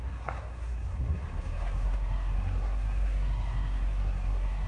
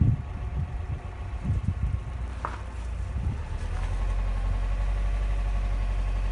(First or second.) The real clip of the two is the second